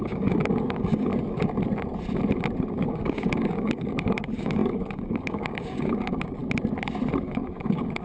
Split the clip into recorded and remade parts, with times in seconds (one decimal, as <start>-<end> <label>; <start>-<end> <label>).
0.0-1.1 remade; 1.1-2.7 recorded; 2.7-6.4 remade; 6.4-7.2 recorded; 7.2-8.0 remade